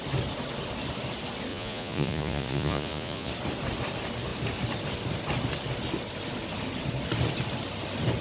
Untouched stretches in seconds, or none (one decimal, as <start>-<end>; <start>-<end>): 0.0-1.5; 3.3-8.2